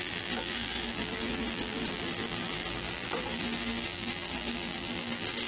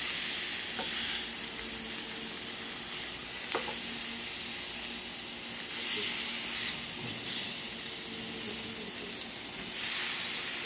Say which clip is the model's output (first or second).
first